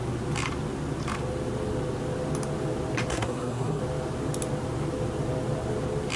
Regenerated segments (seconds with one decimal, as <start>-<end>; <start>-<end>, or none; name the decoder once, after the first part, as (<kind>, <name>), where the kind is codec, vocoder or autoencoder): 3.1-3.8 (codec, SNAC)